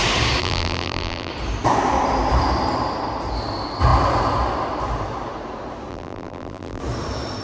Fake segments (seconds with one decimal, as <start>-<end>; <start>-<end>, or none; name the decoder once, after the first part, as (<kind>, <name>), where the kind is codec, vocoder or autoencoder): 0.4-1.3 (vocoder, BigVGAN v2); 5.9-6.8